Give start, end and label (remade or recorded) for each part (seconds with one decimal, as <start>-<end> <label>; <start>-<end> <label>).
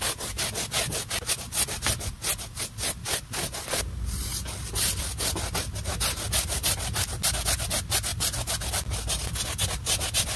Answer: 0.0-10.4 recorded